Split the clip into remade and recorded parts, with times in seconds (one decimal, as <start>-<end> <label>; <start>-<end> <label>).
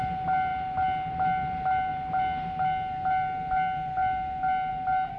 0.0-5.2 recorded